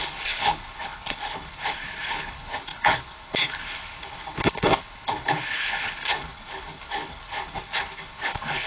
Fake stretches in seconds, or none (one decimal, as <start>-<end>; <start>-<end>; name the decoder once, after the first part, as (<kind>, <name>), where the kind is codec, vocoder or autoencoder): 0.0-8.7 (codec, HILCodec)